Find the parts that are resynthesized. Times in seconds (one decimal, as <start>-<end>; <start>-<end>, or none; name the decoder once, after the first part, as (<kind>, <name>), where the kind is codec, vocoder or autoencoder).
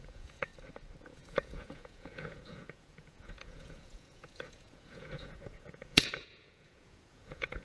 0.0-0.5 (vocoder, Vocos); 1.0-7.6